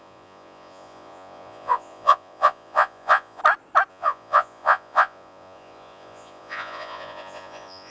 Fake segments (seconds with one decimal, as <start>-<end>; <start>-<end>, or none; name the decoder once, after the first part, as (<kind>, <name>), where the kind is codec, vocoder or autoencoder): 0.0-3.4 (vocoder, Vocos); 3.9-7.9